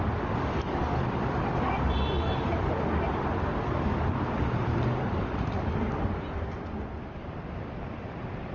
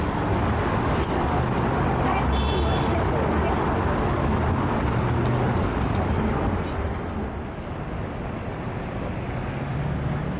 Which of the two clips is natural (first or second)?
second